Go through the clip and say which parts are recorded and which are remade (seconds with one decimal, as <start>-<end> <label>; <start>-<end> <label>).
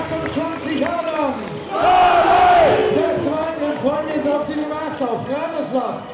0.0-6.1 recorded